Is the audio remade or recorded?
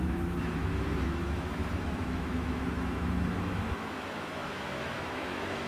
remade